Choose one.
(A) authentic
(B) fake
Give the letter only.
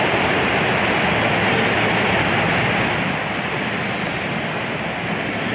A